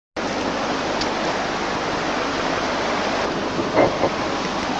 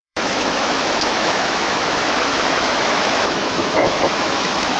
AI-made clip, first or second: second